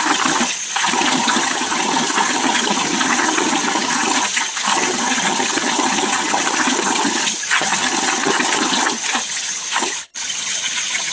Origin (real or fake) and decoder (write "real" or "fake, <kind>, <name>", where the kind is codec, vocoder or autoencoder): fake, vocoder, HiFi-GAN